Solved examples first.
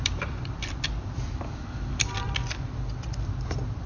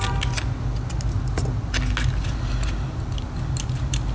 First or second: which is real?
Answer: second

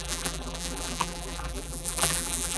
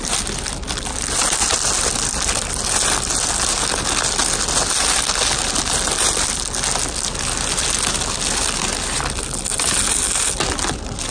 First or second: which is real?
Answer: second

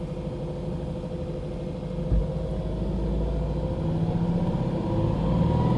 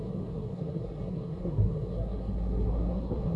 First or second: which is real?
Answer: first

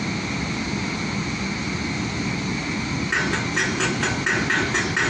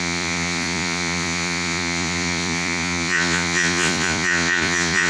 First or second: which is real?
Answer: first